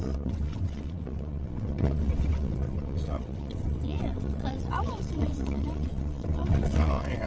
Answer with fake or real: fake